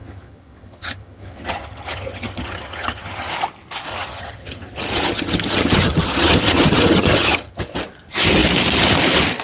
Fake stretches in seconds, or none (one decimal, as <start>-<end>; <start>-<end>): 0.0-3.3; 3.9-7.6